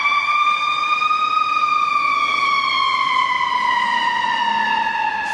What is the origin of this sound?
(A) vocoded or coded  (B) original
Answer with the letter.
B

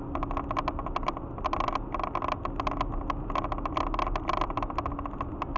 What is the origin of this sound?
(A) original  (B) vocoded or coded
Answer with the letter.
A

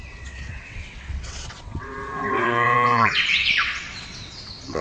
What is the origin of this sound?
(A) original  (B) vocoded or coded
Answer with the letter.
B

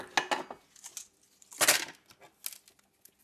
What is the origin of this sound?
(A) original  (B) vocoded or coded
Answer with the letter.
A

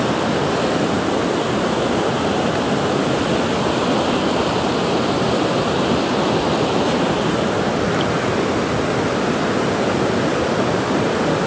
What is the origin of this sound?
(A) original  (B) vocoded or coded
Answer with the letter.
A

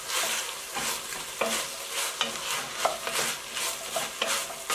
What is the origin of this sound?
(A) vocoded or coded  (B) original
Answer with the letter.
B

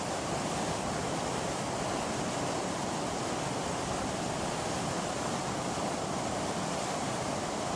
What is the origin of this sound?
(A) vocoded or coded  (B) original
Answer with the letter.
A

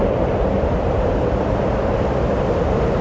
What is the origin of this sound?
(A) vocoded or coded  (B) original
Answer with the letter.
B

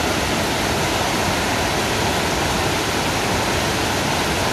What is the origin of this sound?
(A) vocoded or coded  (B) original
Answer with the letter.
B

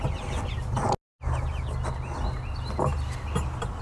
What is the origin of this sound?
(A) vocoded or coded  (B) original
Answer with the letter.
B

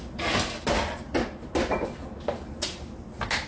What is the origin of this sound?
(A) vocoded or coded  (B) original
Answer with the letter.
B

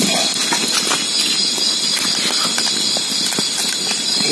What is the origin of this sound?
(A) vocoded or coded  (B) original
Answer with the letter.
B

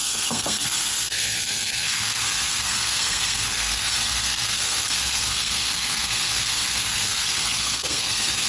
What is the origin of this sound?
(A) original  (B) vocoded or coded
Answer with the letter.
B